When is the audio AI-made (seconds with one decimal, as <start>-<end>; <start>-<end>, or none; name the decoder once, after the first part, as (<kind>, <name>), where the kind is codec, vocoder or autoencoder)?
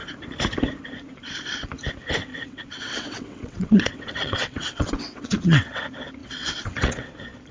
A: 2.3-5.8 (vocoder, WaveNeXt); 6.2-7.1